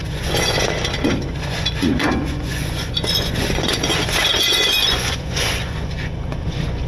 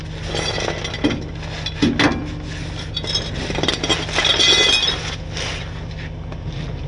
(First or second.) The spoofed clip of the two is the first